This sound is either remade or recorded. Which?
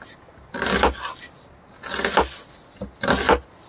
recorded